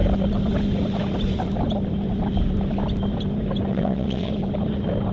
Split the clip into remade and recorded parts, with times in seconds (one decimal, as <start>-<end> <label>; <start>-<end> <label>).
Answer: 0.0-3.7 recorded; 3.7-4.3 remade; 4.3-5.1 recorded